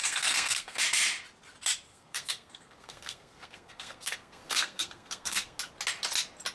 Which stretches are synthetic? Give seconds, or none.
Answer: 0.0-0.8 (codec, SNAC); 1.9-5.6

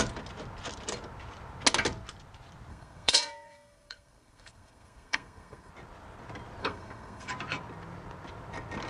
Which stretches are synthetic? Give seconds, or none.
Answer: 2.7-5.7 (codec, SNAC); 6.6-7.3